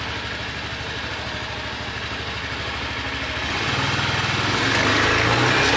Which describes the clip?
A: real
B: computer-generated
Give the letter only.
A